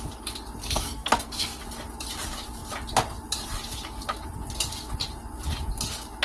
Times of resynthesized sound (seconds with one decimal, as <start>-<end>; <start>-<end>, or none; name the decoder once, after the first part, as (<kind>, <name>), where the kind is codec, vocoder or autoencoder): 0.6-1.6 (codec, SNAC)